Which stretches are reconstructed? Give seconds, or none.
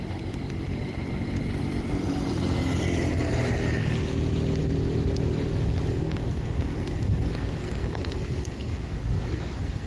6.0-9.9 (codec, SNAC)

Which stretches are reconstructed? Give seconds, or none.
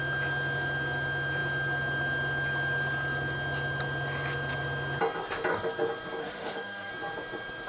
6.2-6.9 (autoencoder, DAC-VAE)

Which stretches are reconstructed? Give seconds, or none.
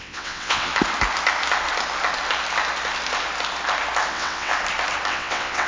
0.0-0.7 (vocoder, WaveNeXt); 4.1-4.5; 5.1-5.7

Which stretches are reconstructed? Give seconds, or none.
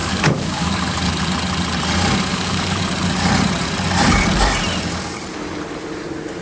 0.0-1.1 (codec, DAC); 2.3-2.8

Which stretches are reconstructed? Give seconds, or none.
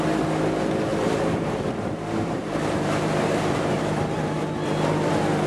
0.9-4.2 (vocoder, BigVGAN v2)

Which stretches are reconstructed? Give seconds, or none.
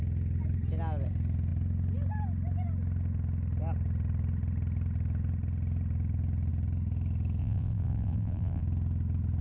7.4-8.6 (vocoder, BigVGAN v2)